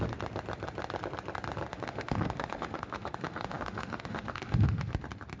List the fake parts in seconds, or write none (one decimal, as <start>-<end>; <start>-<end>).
1.7-4.9

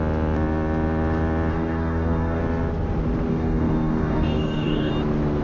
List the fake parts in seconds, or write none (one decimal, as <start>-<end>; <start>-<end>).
1.5-2.4; 3.3-4.9

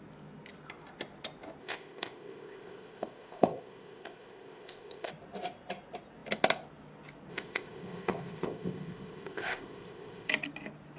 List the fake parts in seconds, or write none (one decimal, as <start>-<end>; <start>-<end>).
1.6-5.1; 7.3-10.3

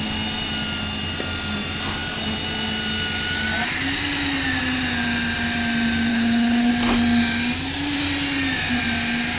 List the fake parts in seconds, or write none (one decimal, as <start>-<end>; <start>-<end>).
6.1-6.7

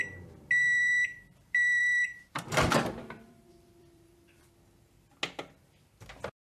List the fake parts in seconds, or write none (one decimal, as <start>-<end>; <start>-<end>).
0.6-4.5

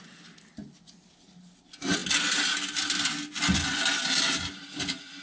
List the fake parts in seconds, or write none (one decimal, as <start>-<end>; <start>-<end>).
none

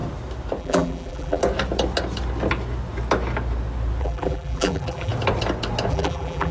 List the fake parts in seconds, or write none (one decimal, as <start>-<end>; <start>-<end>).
0.6-1.4; 4.0-5.1; 5.9-6.5